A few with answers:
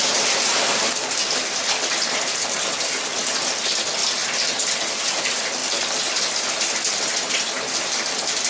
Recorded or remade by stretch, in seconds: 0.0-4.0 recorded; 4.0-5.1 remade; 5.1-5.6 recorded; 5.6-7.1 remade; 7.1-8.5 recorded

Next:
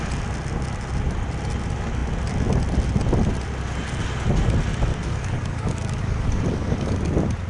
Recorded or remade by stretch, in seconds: 0.0-4.9 recorded; 4.9-7.0 remade; 7.0-7.5 recorded

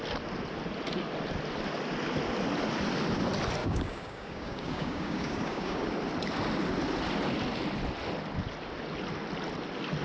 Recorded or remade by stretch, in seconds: 0.0-3.6 recorded; 3.6-5.9 remade; 5.9-10.0 recorded

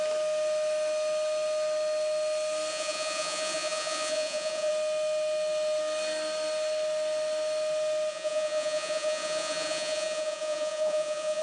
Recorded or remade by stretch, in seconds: 0.0-2.7 recorded; 2.7-4.7 remade; 4.7-8.1 recorded; 8.1-11.4 remade

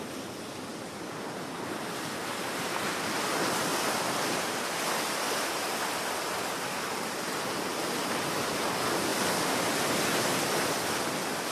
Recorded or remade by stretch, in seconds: 0.0-0.7 recorded; 0.7-1.6 remade; 1.6-11.5 recorded

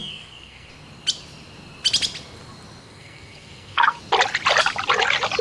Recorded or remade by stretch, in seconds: 0.0-0.7 remade; 0.7-2.8 recorded; 2.8-4.0 remade; 4.0-5.4 recorded

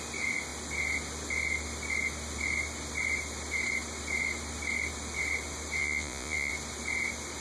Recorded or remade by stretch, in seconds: 0.0-5.8 recorded; 5.8-6.5 remade; 6.5-7.4 recorded

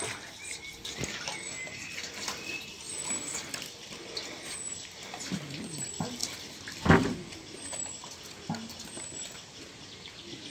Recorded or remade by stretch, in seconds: 0.0-10.5 recorded